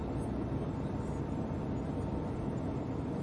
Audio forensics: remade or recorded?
recorded